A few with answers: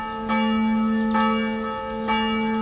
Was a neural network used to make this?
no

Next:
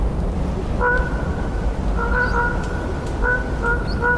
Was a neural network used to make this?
no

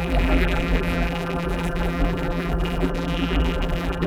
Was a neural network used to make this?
yes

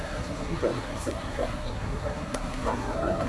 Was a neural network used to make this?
yes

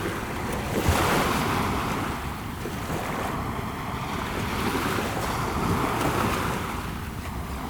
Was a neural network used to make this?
no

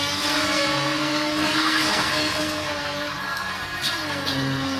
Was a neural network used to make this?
yes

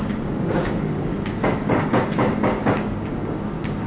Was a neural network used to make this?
yes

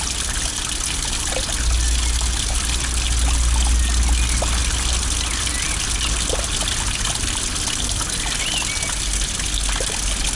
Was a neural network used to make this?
no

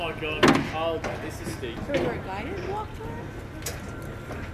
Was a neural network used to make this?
no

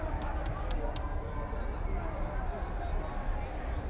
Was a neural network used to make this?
no